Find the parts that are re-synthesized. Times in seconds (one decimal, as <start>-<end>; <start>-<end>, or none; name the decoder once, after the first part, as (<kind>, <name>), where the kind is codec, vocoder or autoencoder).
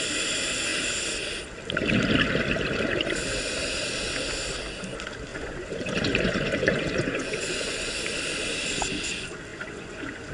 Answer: 5.3-7.9 (vocoder, Vocos); 9.5-10.3